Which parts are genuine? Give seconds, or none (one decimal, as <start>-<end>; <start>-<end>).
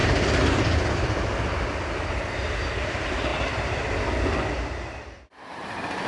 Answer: 0.0-6.1